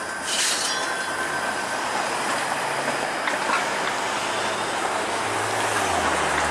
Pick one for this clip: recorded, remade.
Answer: recorded